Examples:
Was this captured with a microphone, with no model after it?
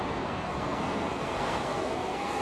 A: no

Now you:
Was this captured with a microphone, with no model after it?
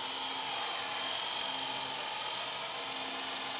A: yes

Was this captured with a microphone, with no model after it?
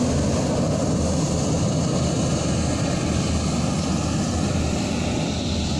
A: yes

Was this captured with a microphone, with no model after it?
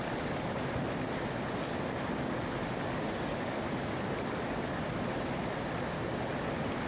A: yes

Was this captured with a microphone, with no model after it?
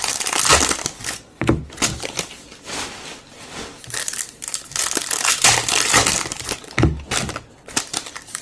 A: yes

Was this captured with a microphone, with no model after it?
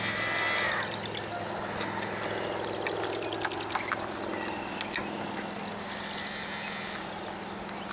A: yes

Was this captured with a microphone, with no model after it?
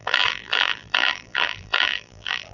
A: no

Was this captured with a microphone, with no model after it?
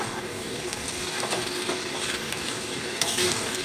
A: no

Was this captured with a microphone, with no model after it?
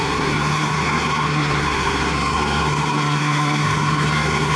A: no